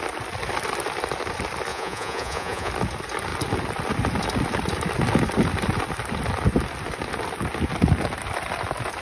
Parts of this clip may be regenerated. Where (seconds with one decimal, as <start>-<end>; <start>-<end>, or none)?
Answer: 1.7-2.7